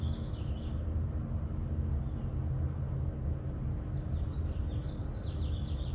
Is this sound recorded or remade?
recorded